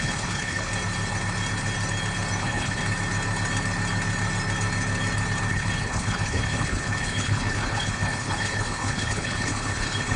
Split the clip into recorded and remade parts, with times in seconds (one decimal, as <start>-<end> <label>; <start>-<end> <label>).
0.0-0.7 remade; 0.7-2.4 recorded; 2.4-2.8 remade; 2.8-5.5 recorded; 5.5-10.2 remade